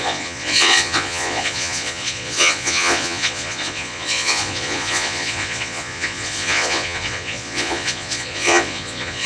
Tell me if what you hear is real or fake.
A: fake